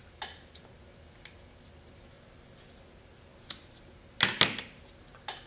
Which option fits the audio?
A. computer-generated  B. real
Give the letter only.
B